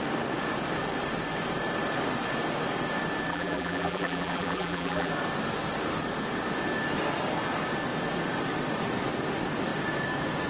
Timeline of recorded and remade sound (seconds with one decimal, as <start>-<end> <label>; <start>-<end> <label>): 0.0-3.3 recorded; 3.3-5.1 remade; 5.1-10.5 recorded

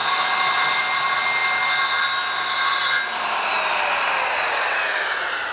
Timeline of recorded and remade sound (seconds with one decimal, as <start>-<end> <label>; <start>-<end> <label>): 0.0-5.5 recorded

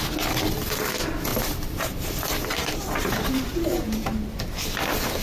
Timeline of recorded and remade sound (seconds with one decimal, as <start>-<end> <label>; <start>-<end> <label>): 0.0-1.3 recorded; 1.3-4.4 remade; 4.4-5.2 recorded

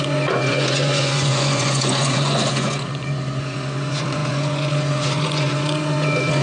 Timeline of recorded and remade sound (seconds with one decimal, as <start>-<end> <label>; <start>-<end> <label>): 0.0-6.4 remade

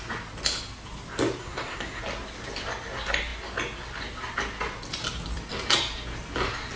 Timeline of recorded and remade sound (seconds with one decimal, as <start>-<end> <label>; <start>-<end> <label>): 0.0-1.4 recorded; 1.4-2.0 remade; 2.0-6.8 recorded

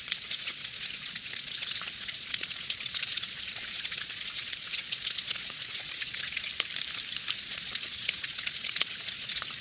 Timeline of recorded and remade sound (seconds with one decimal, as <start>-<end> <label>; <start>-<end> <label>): 0.0-6.5 remade; 6.5-7.4 recorded; 7.4-9.6 remade

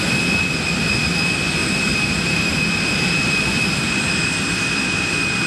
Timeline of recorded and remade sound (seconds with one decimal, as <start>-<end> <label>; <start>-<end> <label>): 0.0-1.6 recorded; 1.6-3.4 remade; 3.4-5.5 recorded

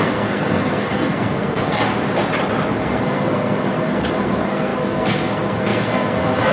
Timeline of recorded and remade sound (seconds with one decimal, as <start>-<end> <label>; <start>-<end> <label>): 0.0-1.9 remade; 1.9-2.8 recorded; 2.8-6.5 remade